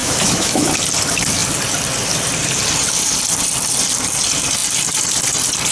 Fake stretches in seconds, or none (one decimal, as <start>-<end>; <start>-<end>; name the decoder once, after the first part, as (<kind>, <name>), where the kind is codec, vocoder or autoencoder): 0.0-0.7 (autoencoder, DAC-VAE)